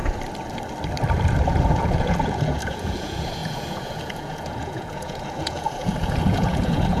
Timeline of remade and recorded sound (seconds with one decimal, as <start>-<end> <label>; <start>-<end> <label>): 0.0-1.4 recorded; 1.4-7.0 remade